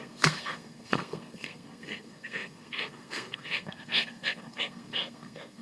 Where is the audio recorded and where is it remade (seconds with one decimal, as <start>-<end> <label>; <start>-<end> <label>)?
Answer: 0.0-5.6 remade